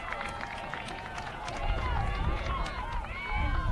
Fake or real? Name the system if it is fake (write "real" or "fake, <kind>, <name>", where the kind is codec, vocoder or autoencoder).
fake, vocoder, Vocos